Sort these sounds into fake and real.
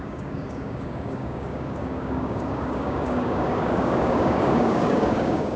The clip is fake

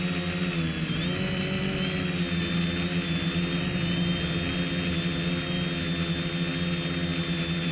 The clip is real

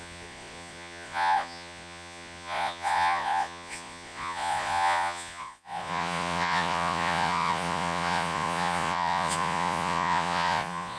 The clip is fake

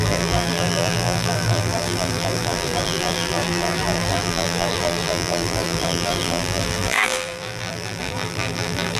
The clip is fake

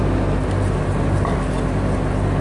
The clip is real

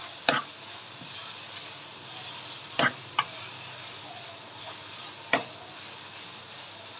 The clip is real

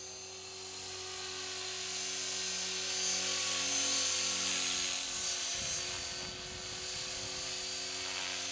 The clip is real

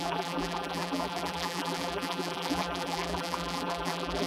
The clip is fake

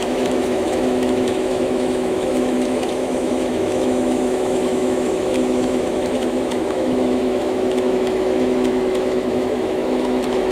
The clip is fake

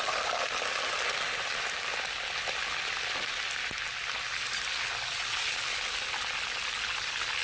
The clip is real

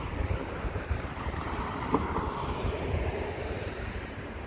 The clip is fake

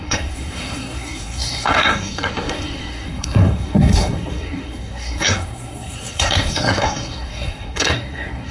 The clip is fake